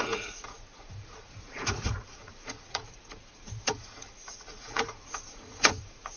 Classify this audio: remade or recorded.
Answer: remade